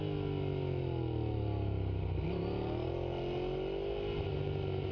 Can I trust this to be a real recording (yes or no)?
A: yes